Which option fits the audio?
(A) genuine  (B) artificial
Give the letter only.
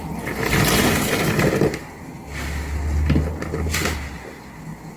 A